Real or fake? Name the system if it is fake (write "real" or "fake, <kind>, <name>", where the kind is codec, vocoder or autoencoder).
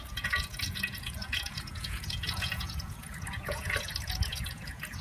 fake, vocoder, Vocos